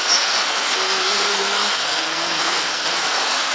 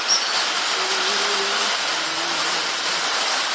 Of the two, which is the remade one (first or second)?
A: first